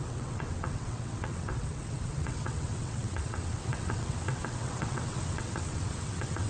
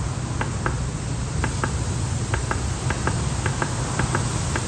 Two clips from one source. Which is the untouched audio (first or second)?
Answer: second